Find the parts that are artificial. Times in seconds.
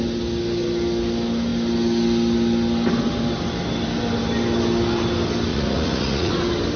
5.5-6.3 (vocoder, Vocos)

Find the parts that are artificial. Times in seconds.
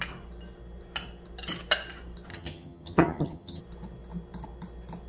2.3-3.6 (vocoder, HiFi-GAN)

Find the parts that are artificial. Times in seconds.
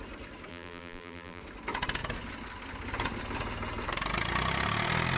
0.5-1.4 (vocoder, BigVGAN v2)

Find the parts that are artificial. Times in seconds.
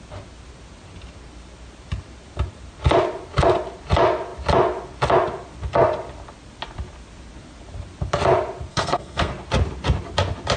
8.7-9.3 (codec, SNAC)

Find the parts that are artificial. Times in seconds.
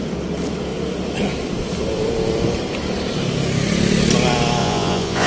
4.6-5.3 (vocoder, Vocos)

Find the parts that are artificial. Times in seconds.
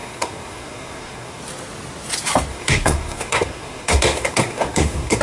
0.0-1.4 (codec, SNAC); 2.5-5.2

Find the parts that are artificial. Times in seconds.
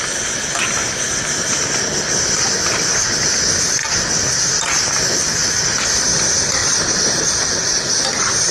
0.8-2.0 (vocoder, BigVGAN v2); 3.8-4.5; 6.6-7.2